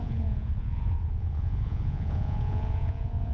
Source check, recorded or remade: remade